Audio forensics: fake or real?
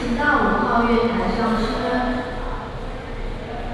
real